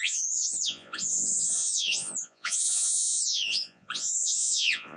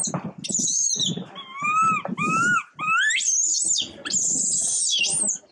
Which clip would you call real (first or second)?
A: second